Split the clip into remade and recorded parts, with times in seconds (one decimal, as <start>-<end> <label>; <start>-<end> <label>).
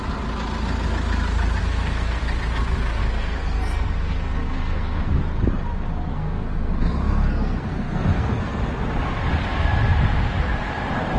0.0-1.6 recorded; 1.6-2.2 remade; 2.2-3.0 recorded; 3.0-5.2 remade; 5.2-6.1 recorded; 6.1-8.6 remade; 8.6-11.2 recorded